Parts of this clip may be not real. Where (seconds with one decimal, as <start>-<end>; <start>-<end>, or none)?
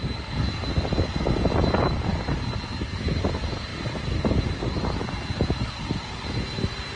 none